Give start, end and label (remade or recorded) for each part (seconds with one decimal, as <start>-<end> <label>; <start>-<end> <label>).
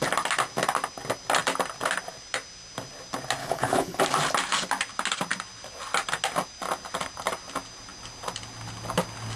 0.0-3.4 recorded; 3.4-4.0 remade; 4.0-9.4 recorded